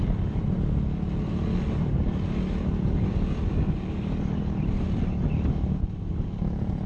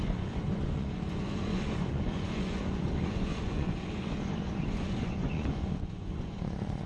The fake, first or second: second